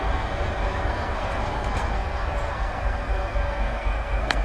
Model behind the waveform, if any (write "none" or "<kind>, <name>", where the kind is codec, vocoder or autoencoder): codec, SNAC